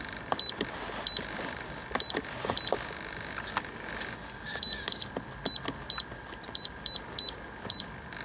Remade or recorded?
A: recorded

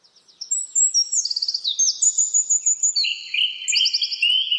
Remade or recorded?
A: recorded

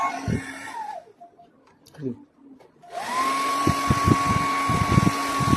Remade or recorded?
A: recorded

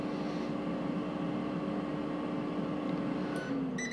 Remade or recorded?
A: recorded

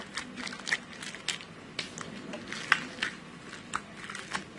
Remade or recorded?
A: recorded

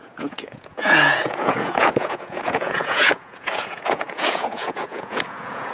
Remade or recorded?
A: remade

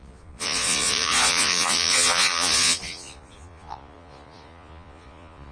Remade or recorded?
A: remade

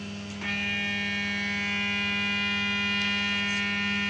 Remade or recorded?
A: recorded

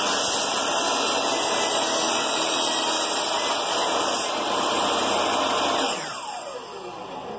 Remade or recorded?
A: recorded